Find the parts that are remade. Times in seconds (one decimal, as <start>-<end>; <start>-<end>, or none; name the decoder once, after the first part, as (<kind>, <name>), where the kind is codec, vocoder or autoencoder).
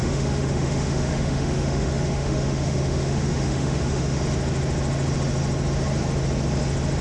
0.0-4.2 (autoencoder, DAC-VAE)